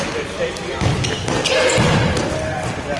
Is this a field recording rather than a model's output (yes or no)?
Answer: yes